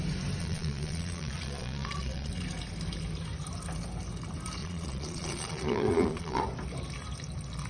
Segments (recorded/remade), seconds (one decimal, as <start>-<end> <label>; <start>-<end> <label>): 0.0-0.4 recorded; 0.4-2.3 remade; 2.3-4.6 recorded; 4.6-6.4 remade; 6.4-7.7 recorded